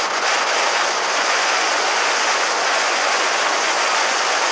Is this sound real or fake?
fake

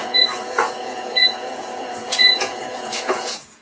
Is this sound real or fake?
fake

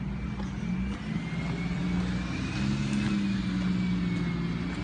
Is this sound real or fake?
real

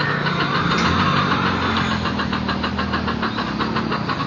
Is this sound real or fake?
real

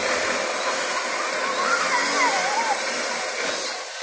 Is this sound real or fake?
real